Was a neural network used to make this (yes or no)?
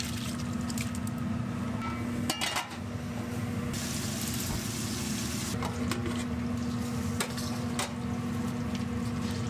no